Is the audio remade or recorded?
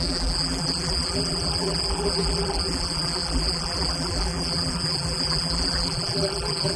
remade